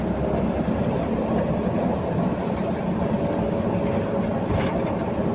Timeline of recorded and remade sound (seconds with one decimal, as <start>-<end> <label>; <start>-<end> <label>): 0.0-4.3 recorded; 4.3-5.3 remade